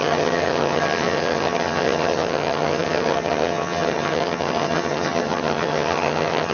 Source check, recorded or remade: remade